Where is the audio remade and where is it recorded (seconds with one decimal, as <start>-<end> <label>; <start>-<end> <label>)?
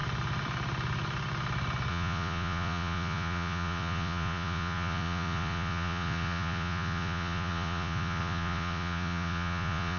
0.0-1.9 recorded; 1.9-10.0 remade